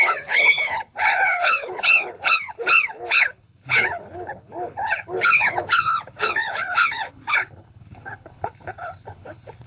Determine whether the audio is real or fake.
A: fake